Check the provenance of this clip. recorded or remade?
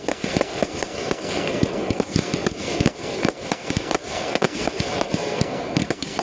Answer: remade